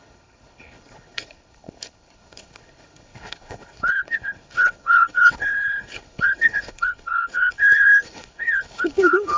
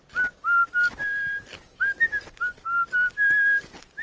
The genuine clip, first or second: second